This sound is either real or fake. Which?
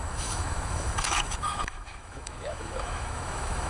fake